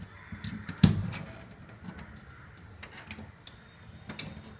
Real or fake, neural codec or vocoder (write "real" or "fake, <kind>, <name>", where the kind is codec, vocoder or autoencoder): real